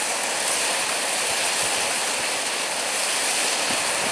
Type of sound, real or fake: real